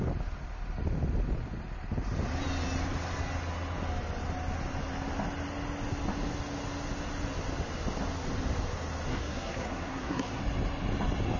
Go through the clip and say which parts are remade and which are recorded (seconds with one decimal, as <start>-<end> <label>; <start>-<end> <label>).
0.0-9.1 recorded; 9.1-10.4 remade; 10.4-11.4 recorded